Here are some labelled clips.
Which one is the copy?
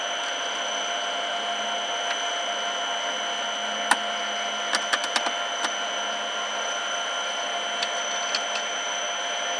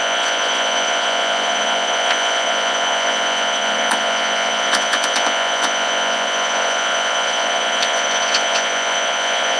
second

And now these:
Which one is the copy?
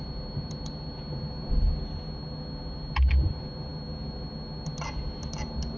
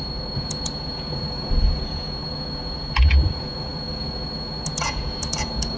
second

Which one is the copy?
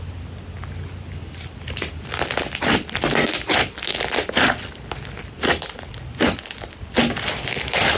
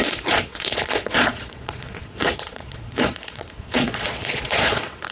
second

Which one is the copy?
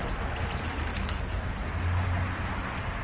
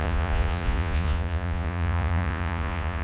second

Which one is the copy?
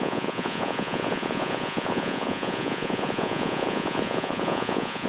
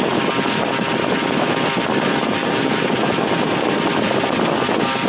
first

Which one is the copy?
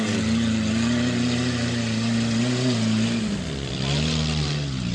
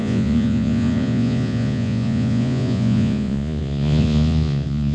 second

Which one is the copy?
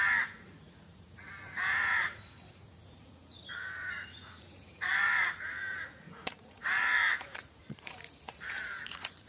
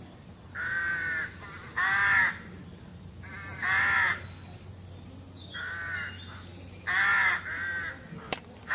first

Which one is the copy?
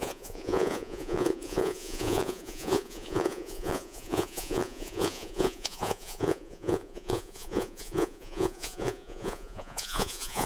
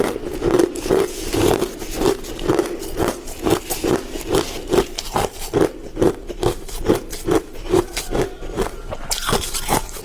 first